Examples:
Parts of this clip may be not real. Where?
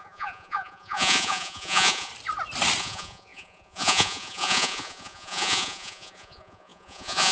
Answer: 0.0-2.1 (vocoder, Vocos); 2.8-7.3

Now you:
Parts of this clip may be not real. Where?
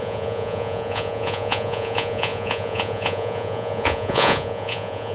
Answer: 0.0-5.1 (vocoder, Vocos)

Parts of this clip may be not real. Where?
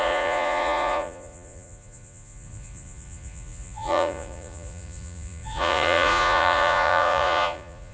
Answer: 0.0-7.9 (vocoder, Vocos)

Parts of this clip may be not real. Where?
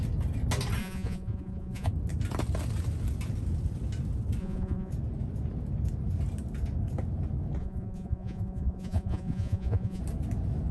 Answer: 0.8-1.9 (vocoder, Vocos); 4.4-4.9; 7.6-10.0